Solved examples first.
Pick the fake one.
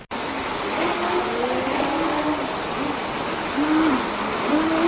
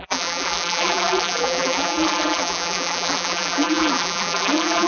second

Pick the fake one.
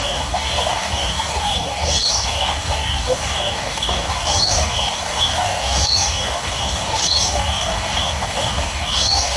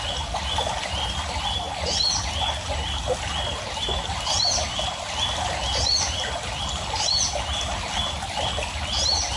first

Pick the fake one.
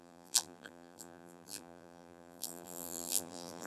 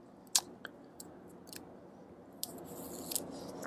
first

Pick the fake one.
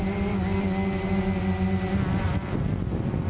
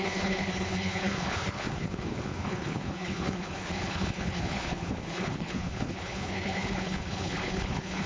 second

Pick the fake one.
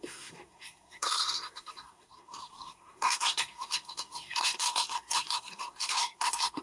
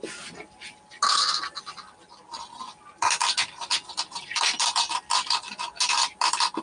first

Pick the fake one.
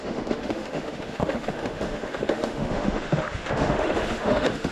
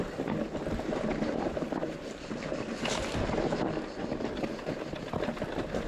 first